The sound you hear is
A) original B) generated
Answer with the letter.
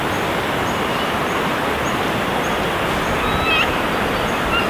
A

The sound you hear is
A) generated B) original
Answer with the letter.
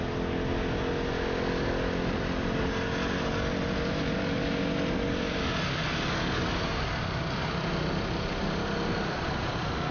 B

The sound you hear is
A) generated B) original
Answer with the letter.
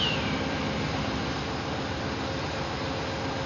B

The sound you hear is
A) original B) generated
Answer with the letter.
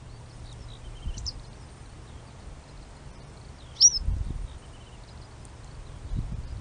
A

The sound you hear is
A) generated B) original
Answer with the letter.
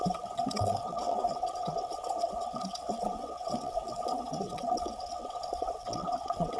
A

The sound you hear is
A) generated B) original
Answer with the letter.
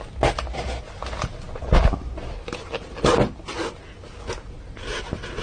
B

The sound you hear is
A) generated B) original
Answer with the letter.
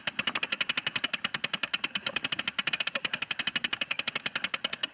B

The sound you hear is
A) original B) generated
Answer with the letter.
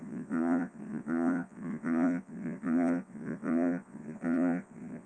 B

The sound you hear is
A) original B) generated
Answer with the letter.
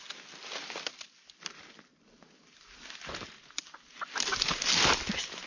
A